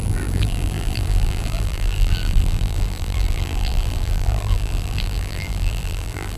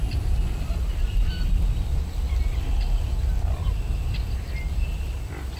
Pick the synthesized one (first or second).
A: first